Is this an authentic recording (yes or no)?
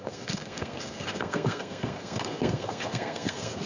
no